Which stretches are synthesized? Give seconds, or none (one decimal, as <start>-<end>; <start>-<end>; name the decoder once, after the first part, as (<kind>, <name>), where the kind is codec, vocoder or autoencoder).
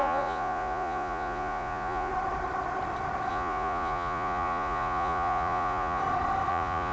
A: 0.0-2.1 (vocoder, Vocos); 3.3-6.0; 6.5-6.9